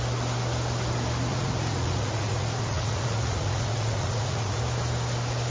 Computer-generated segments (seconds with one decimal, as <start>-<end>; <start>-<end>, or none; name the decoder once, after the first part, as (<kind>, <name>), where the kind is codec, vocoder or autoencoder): 1.3-4.6 (vocoder, Vocos)